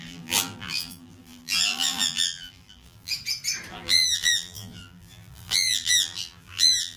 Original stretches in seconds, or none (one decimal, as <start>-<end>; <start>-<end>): 3.1-3.7